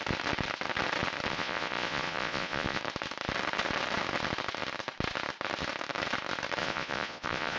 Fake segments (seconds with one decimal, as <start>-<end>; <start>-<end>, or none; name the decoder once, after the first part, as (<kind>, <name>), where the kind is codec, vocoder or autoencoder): 1.3-2.8 (vocoder, Vocos); 6.6-7.6